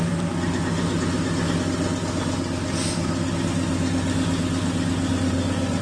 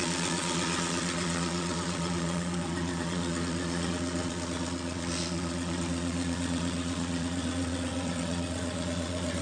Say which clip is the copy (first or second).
second